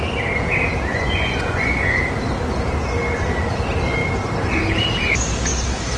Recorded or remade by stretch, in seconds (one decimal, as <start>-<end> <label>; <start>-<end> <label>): 0.0-0.9 recorded; 0.9-2.0 remade; 2.0-6.0 recorded

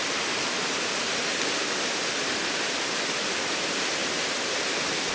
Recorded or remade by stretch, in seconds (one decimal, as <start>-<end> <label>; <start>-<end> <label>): 0.0-5.1 recorded

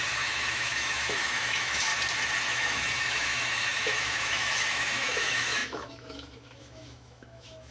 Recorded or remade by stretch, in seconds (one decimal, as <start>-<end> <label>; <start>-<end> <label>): 0.0-1.9 remade; 1.9-2.5 recorded; 2.5-7.7 remade

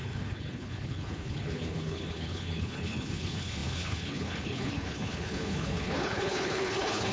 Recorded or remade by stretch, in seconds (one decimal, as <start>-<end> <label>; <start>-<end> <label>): 0.0-7.1 remade

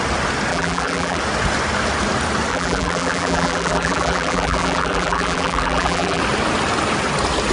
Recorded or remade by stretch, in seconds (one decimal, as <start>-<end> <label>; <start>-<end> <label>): 0.0-0.5 recorded; 0.5-1.2 remade; 1.2-2.5 recorded; 2.5-6.2 remade; 6.2-7.5 recorded